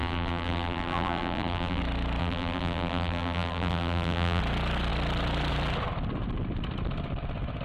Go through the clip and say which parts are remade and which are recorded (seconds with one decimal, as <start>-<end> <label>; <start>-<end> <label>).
0.0-1.8 remade; 1.8-2.2 recorded; 2.2-4.4 remade; 4.4-7.6 recorded

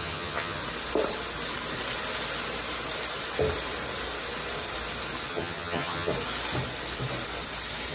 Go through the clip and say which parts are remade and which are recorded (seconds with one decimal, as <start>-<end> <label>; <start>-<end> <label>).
0.0-0.6 remade; 0.6-5.3 recorded; 5.3-6.1 remade; 6.1-7.9 recorded

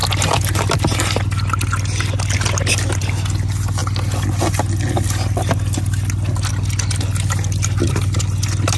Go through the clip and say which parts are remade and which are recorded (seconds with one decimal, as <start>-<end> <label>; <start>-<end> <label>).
0.0-8.8 recorded

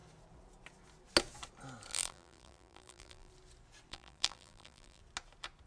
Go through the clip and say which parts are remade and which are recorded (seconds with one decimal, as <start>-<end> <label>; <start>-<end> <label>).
0.0-1.9 recorded; 1.9-3.3 remade; 3.3-3.9 recorded; 3.9-5.0 remade; 5.0-5.7 recorded

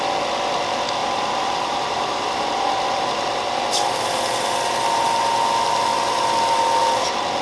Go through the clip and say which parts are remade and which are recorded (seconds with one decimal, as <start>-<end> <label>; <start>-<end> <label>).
0.0-1.0 recorded; 1.0-3.6 remade; 3.6-7.4 recorded

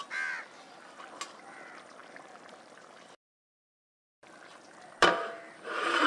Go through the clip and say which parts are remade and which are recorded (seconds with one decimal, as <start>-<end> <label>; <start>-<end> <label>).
0.0-2.0 recorded; 2.0-6.1 remade

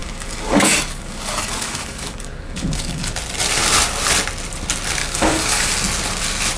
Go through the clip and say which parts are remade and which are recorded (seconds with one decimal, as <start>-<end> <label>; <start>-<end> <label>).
0.0-3.1 remade; 3.1-5.0 recorded; 5.0-5.7 remade; 5.7-6.6 recorded